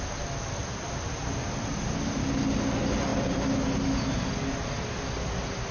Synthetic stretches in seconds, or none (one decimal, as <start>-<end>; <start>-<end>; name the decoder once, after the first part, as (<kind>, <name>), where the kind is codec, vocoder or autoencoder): 0.6-2.2 (vocoder, BigVGAN v2)